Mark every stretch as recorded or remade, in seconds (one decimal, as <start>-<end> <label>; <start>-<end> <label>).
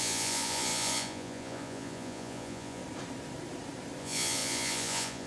0.0-2.8 remade; 2.8-4.0 recorded; 4.0-5.3 remade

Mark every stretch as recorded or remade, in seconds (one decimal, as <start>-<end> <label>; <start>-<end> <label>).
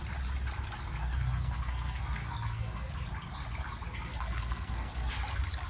0.0-1.0 recorded; 1.0-2.9 remade; 2.9-4.1 recorded; 4.1-5.1 remade; 5.1-5.7 recorded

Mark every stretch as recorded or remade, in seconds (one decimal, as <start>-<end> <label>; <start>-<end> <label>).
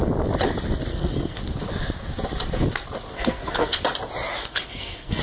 0.0-0.9 recorded; 0.9-1.4 remade; 1.4-3.1 recorded; 3.1-3.8 remade; 3.8-4.4 recorded; 4.4-5.2 remade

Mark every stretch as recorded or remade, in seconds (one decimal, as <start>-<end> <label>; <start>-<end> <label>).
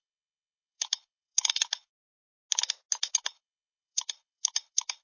0.0-1.9 remade; 1.9-3.1 recorded; 3.1-5.0 remade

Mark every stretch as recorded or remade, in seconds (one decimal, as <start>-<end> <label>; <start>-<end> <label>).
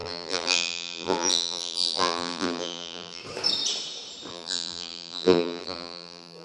0.0-3.2 remade; 3.2-4.3 recorded; 4.3-6.4 remade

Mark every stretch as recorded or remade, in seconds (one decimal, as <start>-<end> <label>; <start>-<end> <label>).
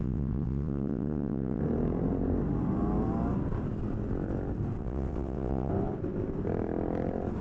0.0-1.6 remade; 1.6-4.8 recorded; 4.8-5.7 remade; 5.7-7.4 recorded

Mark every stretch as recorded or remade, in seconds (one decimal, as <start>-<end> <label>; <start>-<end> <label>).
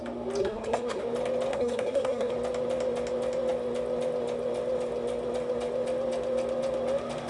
0.0-0.4 recorded; 0.4-1.0 remade; 1.0-1.5 recorded; 1.5-2.3 remade; 2.3-7.3 recorded